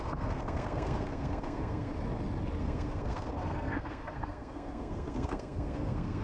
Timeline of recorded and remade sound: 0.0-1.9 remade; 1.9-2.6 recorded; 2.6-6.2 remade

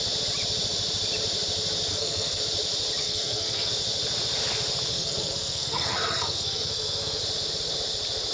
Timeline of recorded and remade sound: 0.0-1.9 recorded; 1.9-2.4 remade; 2.4-3.0 recorded; 3.0-3.7 remade; 3.7-4.9 recorded; 4.9-7.2 remade; 7.2-8.3 recorded